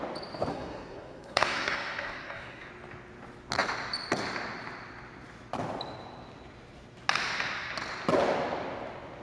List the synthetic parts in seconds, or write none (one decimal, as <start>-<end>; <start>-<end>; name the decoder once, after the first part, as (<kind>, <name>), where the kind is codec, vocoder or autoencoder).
0.5-2.7 (codec, SNAC)